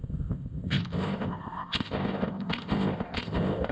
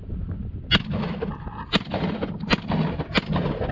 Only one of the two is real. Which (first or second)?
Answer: second